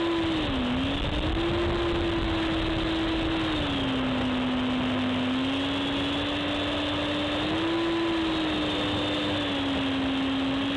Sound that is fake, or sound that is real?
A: real